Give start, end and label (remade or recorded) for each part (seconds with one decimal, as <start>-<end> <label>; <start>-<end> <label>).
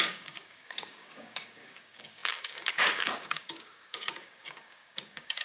0.0-5.4 remade